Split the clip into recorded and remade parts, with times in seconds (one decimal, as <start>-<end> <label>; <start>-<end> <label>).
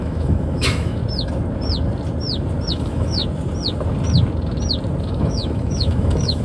0.0-1.0 remade; 1.0-2.7 recorded; 2.7-3.2 remade; 3.2-5.0 recorded; 5.0-6.4 remade